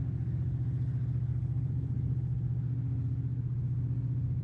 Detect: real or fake real